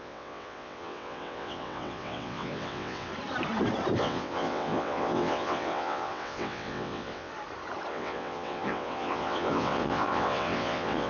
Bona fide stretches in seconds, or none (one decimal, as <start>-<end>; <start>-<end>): 3.1-4.0; 7.3-7.9